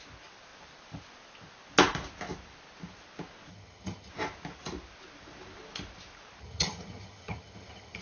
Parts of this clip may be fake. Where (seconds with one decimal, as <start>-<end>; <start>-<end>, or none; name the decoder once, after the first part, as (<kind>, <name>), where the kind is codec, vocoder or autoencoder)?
3.5-4.1 (vocoder, HiFi-GAN); 6.4-8.0